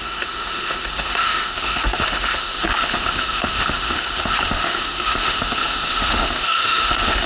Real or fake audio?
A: fake